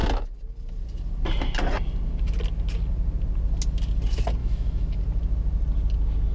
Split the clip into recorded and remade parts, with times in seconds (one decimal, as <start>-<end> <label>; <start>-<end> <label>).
0.0-4.4 recorded; 4.4-5.0 remade; 5.0-6.3 recorded